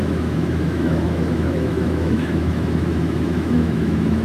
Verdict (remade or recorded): remade